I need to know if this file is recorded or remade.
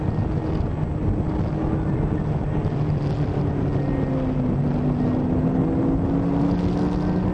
recorded